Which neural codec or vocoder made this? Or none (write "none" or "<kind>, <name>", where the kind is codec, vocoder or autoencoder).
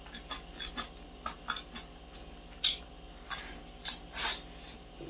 none